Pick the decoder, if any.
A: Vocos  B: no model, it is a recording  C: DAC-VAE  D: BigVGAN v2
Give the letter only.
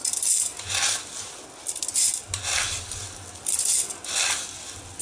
B